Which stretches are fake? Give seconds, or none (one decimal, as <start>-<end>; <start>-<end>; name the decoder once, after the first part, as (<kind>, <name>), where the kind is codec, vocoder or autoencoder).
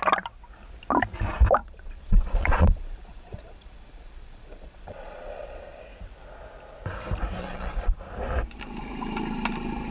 1.6-5.8 (vocoder, Vocos); 7.4-8.1